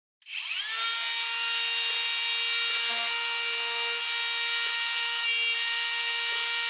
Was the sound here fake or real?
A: real